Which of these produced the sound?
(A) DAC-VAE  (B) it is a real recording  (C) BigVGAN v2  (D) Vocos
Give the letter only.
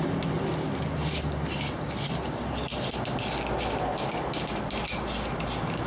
B